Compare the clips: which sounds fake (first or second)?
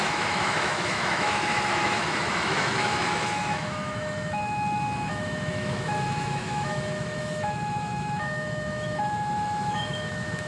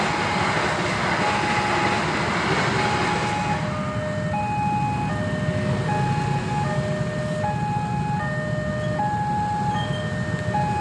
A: first